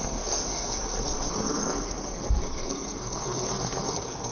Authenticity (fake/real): fake